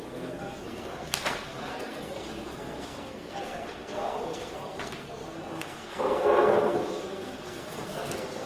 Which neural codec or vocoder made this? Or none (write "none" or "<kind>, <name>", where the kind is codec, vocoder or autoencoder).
codec, SNAC